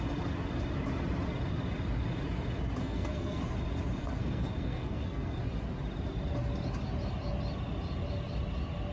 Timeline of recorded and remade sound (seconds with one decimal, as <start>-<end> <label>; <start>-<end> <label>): 0.0-2.8 recorded; 2.8-3.4 remade; 3.4-4.0 recorded; 4.0-5.4 remade; 5.4-8.9 recorded